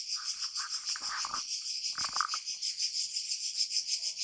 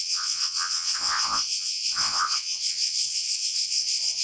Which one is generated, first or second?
second